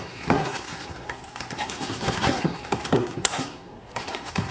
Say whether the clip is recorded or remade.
remade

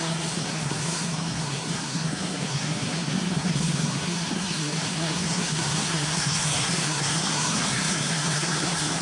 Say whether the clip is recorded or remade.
remade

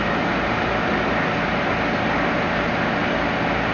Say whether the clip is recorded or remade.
recorded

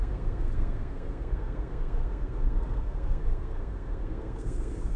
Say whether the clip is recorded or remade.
remade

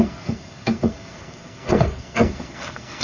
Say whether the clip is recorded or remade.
remade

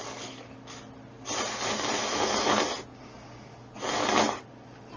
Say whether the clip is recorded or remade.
recorded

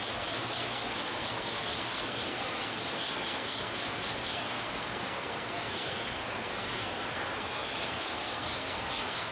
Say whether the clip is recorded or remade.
remade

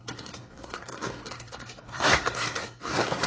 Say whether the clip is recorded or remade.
remade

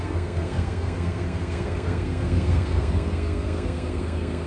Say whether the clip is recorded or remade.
remade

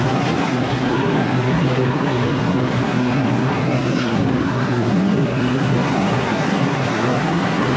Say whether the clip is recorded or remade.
remade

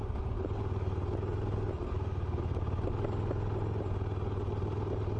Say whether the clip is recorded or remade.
recorded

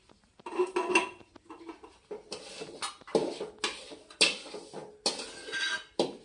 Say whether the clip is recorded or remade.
recorded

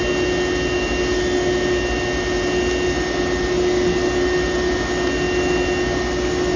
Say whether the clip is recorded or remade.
recorded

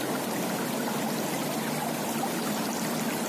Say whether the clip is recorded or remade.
recorded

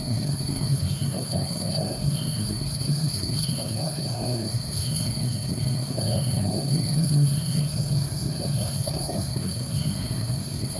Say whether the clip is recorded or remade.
remade